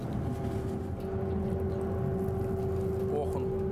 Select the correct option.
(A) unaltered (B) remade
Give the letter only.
A